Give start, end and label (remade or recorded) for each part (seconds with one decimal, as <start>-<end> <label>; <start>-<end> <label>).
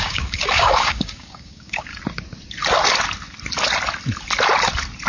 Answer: 0.0-1.9 remade; 1.9-5.1 recorded